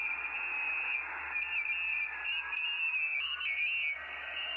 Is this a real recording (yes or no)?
yes